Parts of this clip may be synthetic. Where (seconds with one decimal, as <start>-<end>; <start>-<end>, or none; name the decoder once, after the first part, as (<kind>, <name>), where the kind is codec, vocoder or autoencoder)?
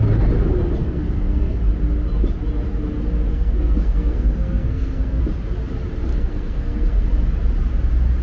0.8-1.6 (codec, SNAC); 3.3-5.2; 6.1-7.1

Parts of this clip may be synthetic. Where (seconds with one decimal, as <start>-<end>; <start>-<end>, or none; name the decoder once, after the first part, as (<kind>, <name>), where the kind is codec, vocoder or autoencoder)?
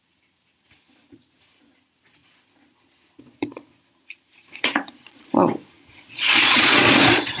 0.0-7.4 (vocoder, Vocos)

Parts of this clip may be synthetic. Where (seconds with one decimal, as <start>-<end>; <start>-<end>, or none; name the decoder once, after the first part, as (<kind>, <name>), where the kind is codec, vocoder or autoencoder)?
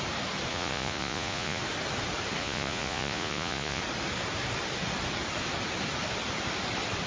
0.5-1.6 (vocoder, Vocos); 2.4-3.8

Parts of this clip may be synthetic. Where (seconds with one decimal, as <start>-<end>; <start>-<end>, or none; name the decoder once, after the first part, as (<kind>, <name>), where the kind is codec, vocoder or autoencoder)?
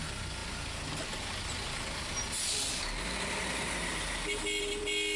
none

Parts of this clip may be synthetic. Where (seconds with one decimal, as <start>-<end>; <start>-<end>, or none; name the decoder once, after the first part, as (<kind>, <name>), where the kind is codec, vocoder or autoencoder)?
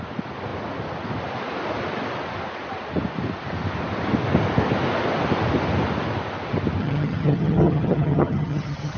6.8-9.0 (vocoder, HiFi-GAN)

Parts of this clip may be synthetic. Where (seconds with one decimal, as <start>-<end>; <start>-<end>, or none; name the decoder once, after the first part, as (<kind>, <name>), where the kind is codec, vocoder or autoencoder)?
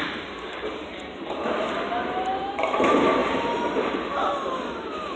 none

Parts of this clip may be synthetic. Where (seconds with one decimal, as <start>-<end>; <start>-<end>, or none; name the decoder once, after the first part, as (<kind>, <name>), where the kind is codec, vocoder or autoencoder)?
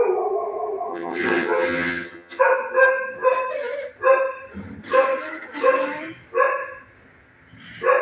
0.9-2.4 (vocoder, HiFi-GAN)